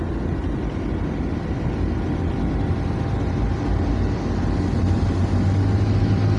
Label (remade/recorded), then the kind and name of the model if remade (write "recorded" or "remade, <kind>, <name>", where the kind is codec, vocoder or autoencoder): recorded